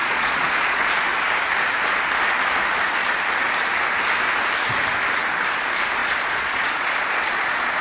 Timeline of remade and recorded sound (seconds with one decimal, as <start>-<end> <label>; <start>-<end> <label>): 0.0-0.8 remade; 0.8-6.0 recorded; 6.0-7.8 remade